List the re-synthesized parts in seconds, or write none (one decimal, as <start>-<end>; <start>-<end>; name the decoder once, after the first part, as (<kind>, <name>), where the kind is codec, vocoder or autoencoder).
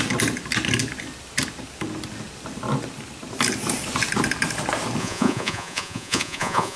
5.0-6.8 (vocoder, Vocos)